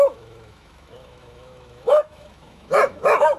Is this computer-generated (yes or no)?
yes